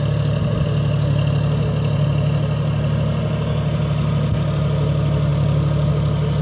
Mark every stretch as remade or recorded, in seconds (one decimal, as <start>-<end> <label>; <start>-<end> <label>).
0.0-6.4 recorded